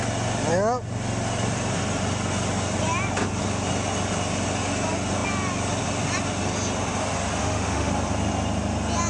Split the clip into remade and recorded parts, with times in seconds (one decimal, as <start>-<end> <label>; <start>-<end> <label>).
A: 0.0-7.4 recorded; 7.4-7.9 remade; 7.9-9.1 recorded